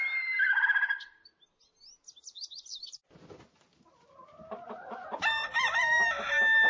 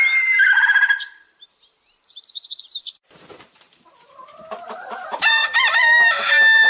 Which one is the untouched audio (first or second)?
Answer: first